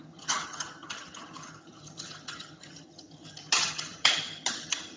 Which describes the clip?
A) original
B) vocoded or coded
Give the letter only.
B